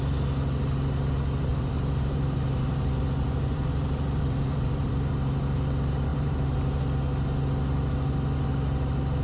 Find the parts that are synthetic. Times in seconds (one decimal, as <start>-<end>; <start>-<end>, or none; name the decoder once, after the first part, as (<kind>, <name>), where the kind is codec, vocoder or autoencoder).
1.5-4.9 (vocoder, BigVGAN v2); 6.1-6.8